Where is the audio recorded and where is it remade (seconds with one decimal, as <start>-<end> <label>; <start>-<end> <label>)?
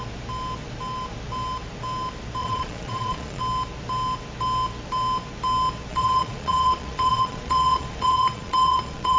0.0-2.4 recorded; 2.4-3.4 remade; 3.4-5.9 recorded; 5.9-9.2 remade